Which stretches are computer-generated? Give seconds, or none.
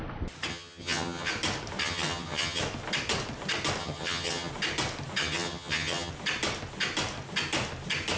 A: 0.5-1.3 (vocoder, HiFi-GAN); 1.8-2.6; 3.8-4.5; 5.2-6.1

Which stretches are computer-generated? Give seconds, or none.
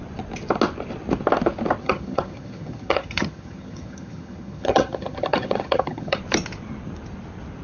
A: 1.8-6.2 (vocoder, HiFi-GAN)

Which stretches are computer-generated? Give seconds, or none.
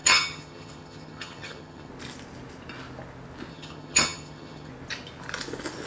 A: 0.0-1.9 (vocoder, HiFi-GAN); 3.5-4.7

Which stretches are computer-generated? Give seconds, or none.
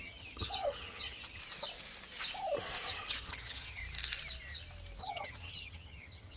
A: 0.0-1.4 (vocoder, HiFi-GAN); 2.9-3.8; 5.0-6.4